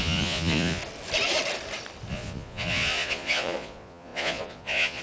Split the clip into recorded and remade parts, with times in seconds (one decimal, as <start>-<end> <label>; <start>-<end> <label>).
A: 0.0-0.8 remade; 0.8-2.1 recorded; 2.1-5.0 remade